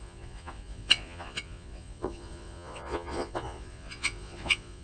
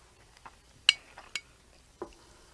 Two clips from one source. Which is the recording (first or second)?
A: second